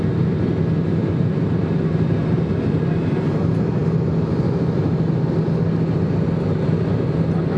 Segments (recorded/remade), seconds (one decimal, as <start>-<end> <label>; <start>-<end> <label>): 0.0-1.0 recorded; 1.0-2.1 remade; 2.1-7.6 recorded

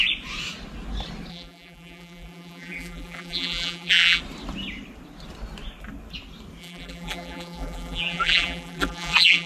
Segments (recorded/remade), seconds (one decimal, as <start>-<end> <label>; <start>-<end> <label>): 0.0-1.3 recorded; 1.3-4.2 remade; 4.2-6.6 recorded; 6.6-9.5 remade

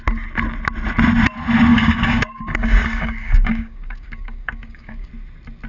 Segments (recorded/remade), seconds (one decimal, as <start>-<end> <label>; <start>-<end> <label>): 0.0-1.7 recorded; 1.7-5.1 remade; 5.1-5.7 recorded